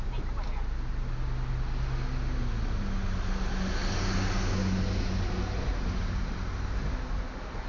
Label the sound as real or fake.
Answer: real